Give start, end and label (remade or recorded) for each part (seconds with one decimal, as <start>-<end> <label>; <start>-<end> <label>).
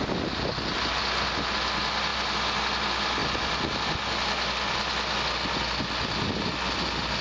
0.0-7.2 recorded